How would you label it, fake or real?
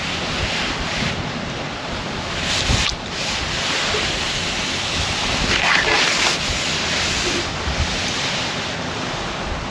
real